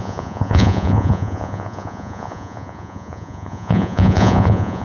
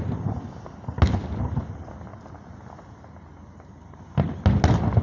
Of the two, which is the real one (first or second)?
second